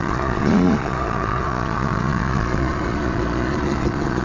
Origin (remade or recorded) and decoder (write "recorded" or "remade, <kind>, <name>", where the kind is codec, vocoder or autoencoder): remade, vocoder, Vocos